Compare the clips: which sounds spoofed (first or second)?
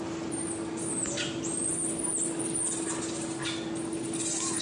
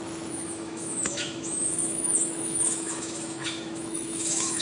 second